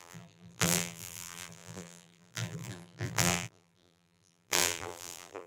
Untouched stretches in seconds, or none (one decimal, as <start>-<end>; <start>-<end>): none